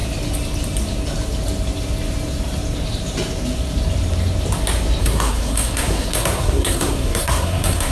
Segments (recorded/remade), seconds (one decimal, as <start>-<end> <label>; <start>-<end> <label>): 0.0-5.0 recorded; 5.0-7.9 remade